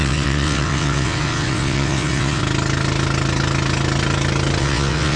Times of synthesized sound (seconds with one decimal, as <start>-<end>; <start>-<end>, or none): 0.0-2.4; 4.6-5.2

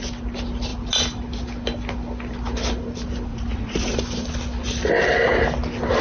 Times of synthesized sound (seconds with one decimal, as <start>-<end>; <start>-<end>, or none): 3.3-4.0